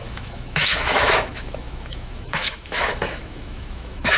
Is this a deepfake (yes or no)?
yes